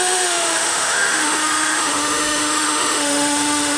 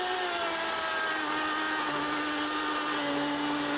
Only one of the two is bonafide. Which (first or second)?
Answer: second